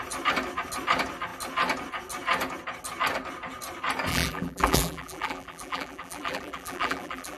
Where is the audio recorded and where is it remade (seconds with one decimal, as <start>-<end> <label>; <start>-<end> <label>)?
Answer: 0.0-4.1 recorded; 4.1-7.4 remade